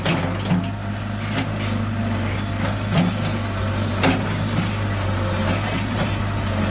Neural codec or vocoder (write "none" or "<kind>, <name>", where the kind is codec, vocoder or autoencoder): none